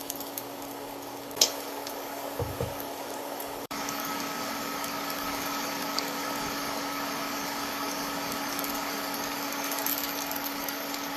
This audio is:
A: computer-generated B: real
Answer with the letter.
A